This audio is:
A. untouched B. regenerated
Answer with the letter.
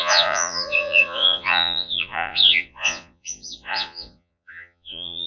B